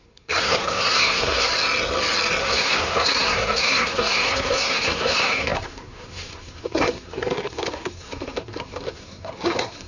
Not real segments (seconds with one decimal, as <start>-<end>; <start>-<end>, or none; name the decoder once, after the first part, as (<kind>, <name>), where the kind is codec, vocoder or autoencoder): 0.0-1.5 (codec, SNAC); 2.4-9.9